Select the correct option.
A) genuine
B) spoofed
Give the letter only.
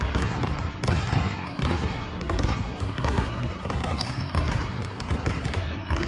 B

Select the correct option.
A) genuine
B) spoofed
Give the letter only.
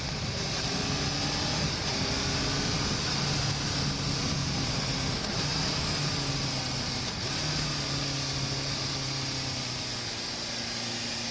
A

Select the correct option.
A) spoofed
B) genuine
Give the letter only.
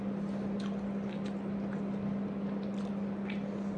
B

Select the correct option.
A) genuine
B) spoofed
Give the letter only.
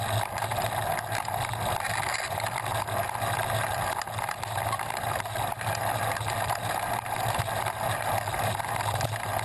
A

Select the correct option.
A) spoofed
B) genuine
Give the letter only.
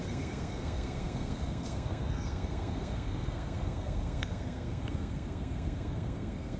A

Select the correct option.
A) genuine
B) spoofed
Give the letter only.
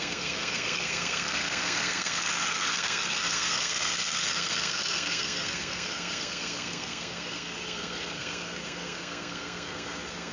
B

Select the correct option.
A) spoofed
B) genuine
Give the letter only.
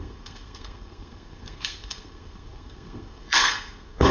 A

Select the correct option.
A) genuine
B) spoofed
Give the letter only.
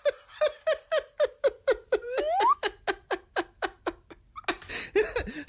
A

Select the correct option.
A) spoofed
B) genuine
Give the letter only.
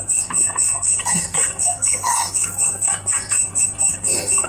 A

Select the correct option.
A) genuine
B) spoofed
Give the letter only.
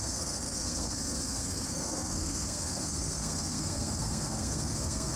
B